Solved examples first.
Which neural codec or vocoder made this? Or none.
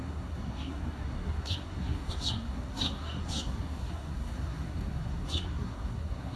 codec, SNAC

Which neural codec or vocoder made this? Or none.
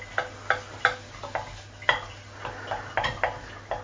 none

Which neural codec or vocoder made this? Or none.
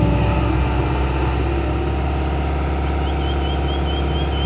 none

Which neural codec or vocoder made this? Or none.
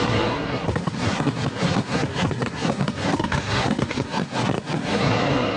codec, SNAC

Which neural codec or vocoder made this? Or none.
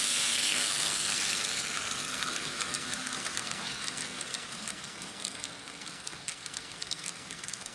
codec, SNAC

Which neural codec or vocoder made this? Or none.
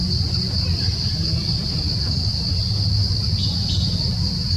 none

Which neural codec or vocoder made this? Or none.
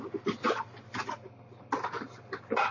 none